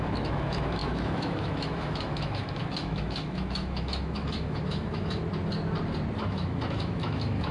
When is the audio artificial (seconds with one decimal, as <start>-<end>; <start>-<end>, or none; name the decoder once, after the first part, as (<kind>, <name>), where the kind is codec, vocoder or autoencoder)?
0.0-5.2 (autoencoder, DAC-VAE); 6.2-7.5